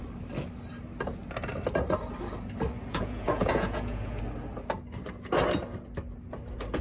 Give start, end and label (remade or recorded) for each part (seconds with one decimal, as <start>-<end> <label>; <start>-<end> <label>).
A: 0.0-2.9 recorded; 2.9-4.2 remade; 4.2-6.8 recorded